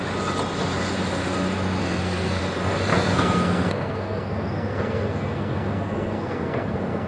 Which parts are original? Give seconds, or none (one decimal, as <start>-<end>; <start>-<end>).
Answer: 0.0-1.8; 2.4-2.9